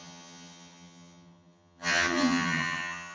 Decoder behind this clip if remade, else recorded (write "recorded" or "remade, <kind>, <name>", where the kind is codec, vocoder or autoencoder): remade, vocoder, HiFi-GAN